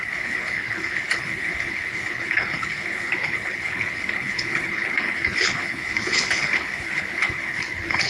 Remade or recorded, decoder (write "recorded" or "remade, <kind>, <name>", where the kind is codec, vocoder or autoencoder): remade, codec, HILCodec